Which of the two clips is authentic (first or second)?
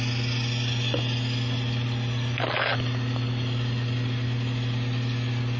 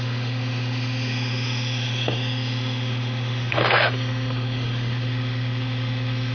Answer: first